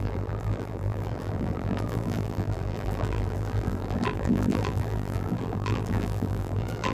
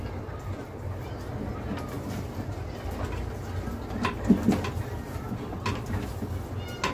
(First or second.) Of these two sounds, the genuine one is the second